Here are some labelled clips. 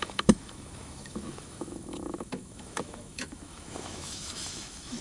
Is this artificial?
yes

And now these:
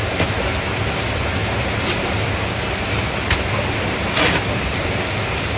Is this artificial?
no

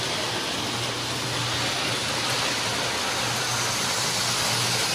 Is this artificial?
no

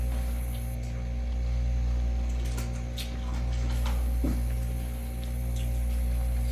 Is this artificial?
no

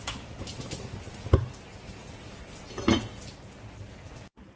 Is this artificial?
no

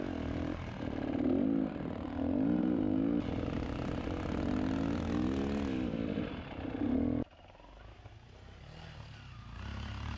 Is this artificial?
no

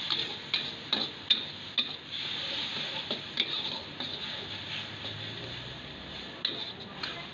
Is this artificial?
no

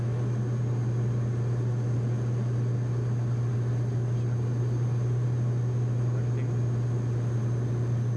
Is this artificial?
no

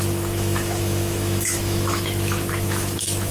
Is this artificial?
yes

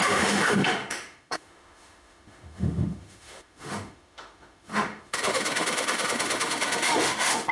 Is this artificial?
yes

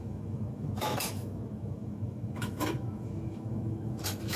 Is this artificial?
yes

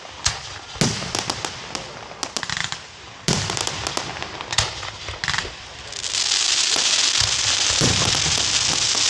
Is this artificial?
no